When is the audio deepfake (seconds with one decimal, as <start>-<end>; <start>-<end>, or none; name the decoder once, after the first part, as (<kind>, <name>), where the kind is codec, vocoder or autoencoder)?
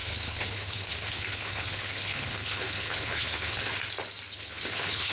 0.0-3.7 (codec, HILCodec); 4.3-5.1